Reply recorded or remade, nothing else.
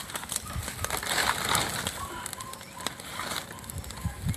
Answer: recorded